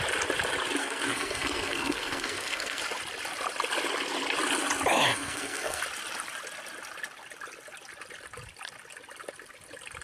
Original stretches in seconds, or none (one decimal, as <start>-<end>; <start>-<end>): 0.0-0.8; 2.8-5.1; 5.8-10.0